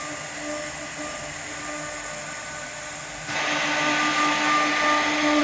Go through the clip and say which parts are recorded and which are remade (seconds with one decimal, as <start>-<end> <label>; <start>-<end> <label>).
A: 0.0-5.4 recorded